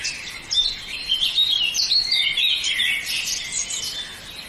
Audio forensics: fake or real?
real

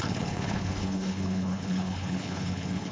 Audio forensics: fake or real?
fake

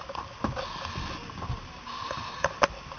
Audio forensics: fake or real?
real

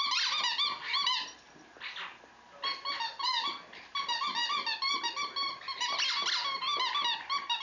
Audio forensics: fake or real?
real